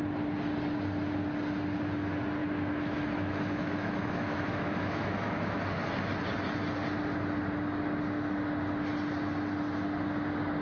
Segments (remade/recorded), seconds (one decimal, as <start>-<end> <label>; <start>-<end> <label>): 0.0-2.4 recorded; 2.4-5.6 remade; 5.6-10.6 recorded